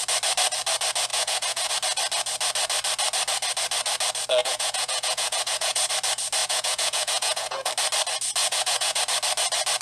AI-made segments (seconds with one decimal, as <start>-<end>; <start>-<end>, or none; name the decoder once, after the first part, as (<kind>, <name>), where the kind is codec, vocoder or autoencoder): 1.1-1.7 (vocoder, Vocos); 4.4-5.9; 6.4-7.7; 8.4-9.0

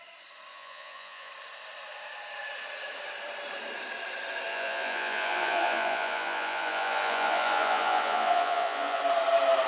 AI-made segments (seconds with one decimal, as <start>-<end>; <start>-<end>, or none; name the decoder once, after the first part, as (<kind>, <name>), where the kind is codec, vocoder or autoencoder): 0.5-1.3 (vocoder, Vocos); 4.5-9.0

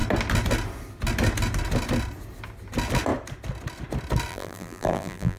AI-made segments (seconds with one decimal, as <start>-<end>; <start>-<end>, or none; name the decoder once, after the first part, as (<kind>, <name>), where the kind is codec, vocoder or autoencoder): 4.3-5.4 (vocoder, BigVGAN v2)

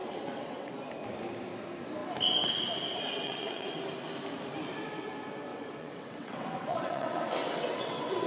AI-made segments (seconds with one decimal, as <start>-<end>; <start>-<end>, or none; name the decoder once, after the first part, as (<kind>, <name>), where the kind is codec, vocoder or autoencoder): 0.0-0.7 (vocoder, WaveNeXt); 3.2-3.8; 5.5-8.3

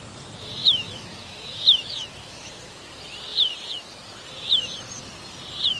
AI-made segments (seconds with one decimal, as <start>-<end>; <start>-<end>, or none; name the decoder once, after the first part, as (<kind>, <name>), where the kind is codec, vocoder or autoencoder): 0.6-2.9 (autoencoder, DAC-VAE)

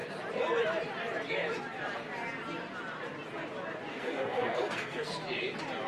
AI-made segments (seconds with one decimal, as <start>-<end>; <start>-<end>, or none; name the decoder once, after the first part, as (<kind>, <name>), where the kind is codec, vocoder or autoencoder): 3.9-5.2 (codec, SNAC)

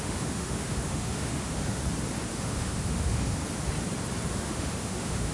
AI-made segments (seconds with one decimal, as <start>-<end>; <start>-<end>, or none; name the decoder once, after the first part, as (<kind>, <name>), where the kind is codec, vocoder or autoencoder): 0.0-1.8 (autoencoder, DAC-VAE); 2.4-3.4; 4.3-5.3